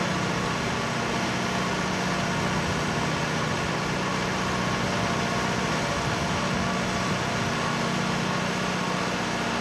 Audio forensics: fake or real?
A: real